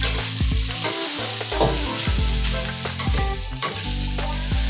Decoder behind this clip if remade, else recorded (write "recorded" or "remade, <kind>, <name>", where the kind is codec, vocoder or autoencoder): recorded